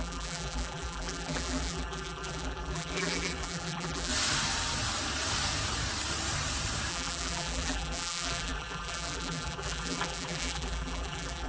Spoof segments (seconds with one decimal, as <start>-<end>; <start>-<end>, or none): 0.0-4.1; 6.9-11.5